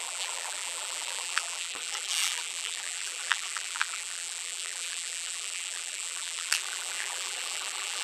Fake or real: fake